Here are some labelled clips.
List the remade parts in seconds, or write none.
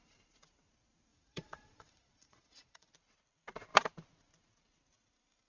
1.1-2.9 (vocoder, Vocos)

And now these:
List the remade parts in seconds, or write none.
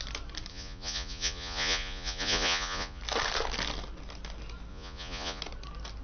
0.5-3.0 (vocoder, Vocos); 4.7-5.4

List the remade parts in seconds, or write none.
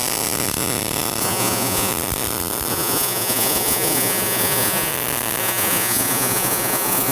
1.2-1.9 (vocoder, Vocos); 2.7-4.9; 5.4-7.1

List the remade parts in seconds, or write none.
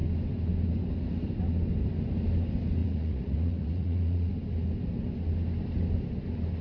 2.8-4.3 (vocoder, Vocos)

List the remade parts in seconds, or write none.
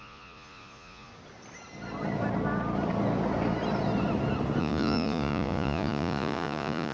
0.0-1.1 (vocoder, Vocos); 4.6-6.9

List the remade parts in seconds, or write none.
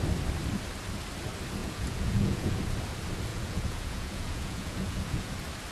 1.6-2.6 (vocoder, Vocos); 3.3-5.3